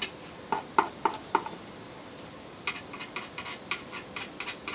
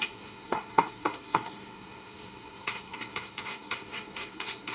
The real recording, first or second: first